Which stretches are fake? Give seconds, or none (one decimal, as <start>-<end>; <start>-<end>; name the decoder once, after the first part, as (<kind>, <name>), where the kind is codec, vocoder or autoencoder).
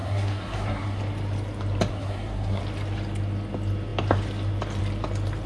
0.0-1.0 (codec, SNAC); 1.9-2.6